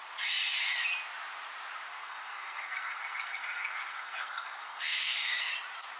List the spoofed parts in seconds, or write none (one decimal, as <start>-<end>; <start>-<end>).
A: 1.9-5.5